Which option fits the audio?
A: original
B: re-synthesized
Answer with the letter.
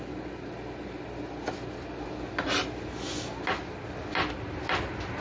A